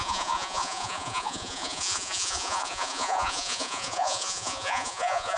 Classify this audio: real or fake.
fake